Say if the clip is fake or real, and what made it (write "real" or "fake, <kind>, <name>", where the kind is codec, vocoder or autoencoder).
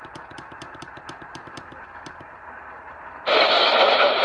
fake, vocoder, BigVGAN v2